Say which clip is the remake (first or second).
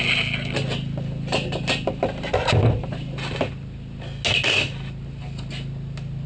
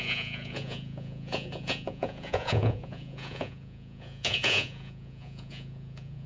second